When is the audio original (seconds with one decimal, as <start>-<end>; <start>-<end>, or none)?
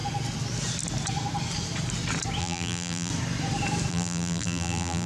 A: 0.0-2.4; 3.1-3.9